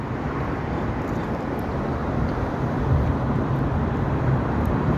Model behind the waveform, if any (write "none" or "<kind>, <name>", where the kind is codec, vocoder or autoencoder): vocoder, BigVGAN v2